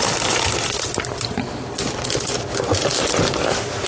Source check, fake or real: real